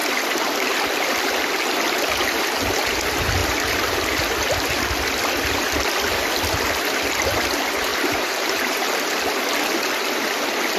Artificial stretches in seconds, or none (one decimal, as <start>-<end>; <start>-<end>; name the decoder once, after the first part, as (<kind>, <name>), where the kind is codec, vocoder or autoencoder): 7.9-8.9 (vocoder, BigVGAN v2)